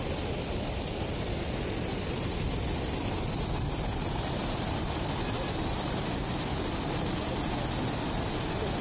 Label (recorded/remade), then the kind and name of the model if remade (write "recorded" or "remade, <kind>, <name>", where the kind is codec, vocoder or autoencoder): recorded